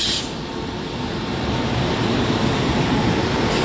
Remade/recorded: remade